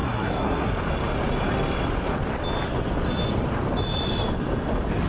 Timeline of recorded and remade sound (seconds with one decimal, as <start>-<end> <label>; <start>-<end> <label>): 0.0-0.7 remade; 0.7-5.1 recorded